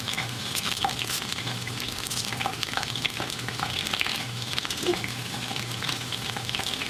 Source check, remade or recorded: remade